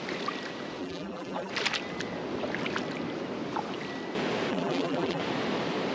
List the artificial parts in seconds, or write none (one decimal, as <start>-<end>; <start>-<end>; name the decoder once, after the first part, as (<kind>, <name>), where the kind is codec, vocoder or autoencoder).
0.8-1.5 (vocoder, BigVGAN v2); 4.5-5.2